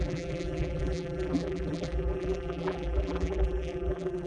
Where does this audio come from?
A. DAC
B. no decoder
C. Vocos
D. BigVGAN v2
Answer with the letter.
D